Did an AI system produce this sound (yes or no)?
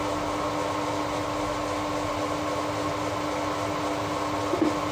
no